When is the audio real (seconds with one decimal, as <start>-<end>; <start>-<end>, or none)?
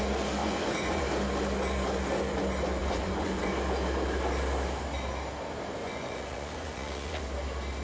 0.0-0.4; 1.0-2.8; 3.5-5.8; 7.2-7.8